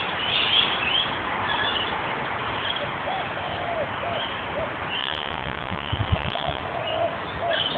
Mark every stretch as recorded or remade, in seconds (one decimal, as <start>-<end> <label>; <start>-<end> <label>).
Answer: 0.0-5.0 recorded; 5.0-6.6 remade; 6.6-7.8 recorded